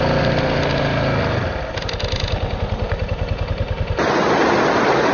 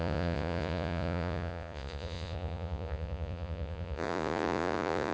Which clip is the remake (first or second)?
second